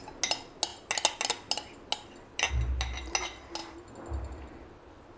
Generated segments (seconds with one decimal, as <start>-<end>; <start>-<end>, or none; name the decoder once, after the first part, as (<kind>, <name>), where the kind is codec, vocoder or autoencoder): none